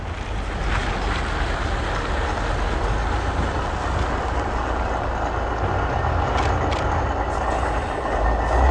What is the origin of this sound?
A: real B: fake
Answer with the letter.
A